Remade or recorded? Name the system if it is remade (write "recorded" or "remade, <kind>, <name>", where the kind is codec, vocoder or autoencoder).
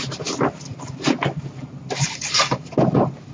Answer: recorded